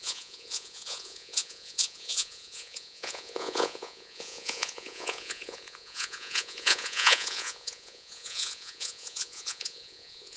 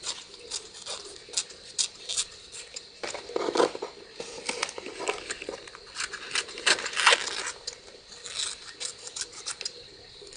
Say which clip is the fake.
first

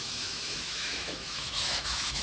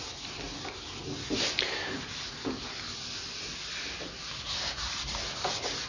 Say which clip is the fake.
first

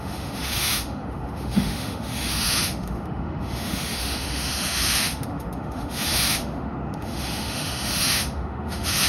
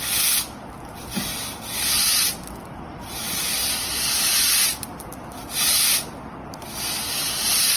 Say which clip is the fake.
first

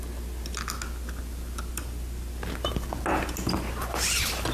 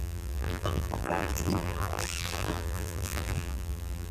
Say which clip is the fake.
second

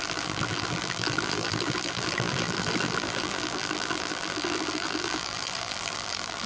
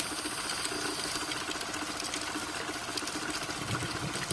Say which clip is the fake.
first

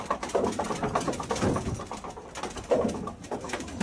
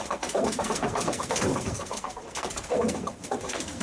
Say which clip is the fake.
second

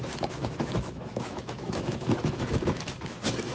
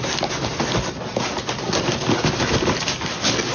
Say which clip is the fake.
first